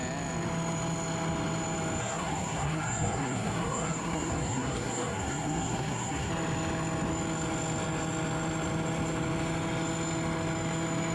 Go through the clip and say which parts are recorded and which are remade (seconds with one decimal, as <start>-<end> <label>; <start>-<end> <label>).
0.0-2.0 recorded; 2.0-6.3 remade; 6.3-11.1 recorded